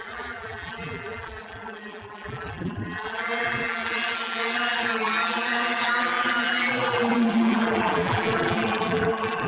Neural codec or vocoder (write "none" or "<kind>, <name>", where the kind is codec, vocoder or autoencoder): vocoder, BigVGAN v2